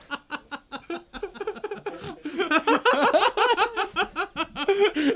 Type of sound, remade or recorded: recorded